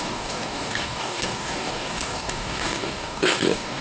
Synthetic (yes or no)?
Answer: yes